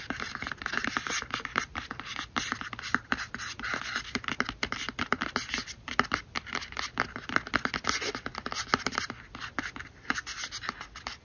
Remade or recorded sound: recorded